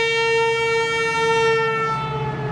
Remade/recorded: recorded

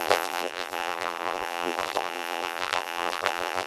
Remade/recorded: remade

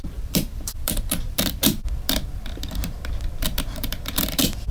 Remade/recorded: remade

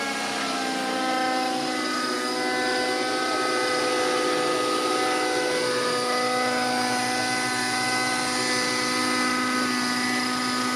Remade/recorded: recorded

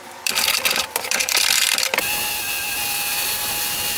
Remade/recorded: remade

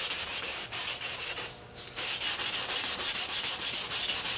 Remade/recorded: recorded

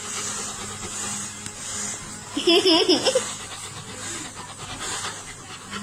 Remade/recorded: recorded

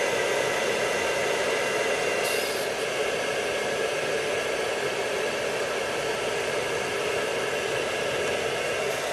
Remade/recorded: recorded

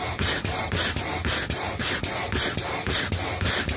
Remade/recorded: recorded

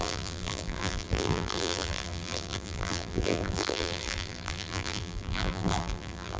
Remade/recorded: remade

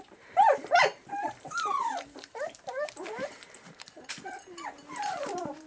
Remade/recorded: remade